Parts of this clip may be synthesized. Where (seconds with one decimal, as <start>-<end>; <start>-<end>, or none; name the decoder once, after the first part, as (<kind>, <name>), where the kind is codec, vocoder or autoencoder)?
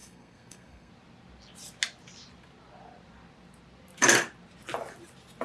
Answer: 0.0-0.9 (codec, SNAC)